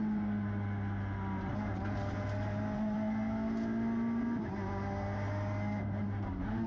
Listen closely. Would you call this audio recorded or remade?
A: recorded